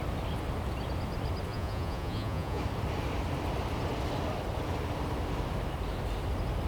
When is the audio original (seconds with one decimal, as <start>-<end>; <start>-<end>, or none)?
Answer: 0.0-1.5; 2.6-6.7